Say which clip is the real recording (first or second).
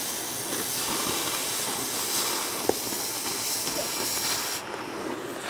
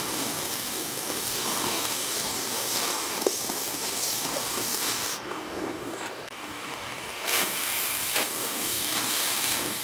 first